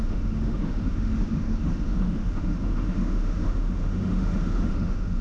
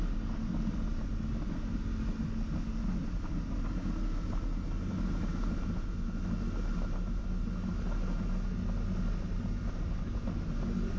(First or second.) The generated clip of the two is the first